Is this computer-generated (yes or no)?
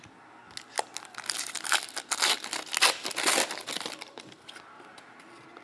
no